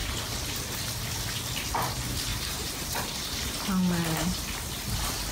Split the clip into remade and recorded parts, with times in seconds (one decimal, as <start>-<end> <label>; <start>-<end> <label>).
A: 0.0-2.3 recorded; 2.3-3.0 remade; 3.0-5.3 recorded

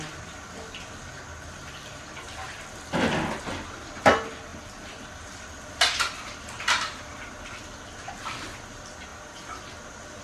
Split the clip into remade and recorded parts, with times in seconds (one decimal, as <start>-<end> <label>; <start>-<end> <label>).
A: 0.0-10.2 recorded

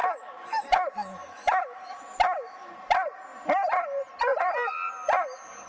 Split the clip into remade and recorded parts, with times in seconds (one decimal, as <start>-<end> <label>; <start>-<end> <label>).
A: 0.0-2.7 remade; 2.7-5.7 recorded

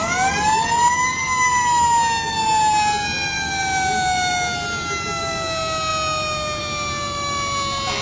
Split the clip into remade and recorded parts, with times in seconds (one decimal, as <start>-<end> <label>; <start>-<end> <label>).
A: 0.0-8.0 recorded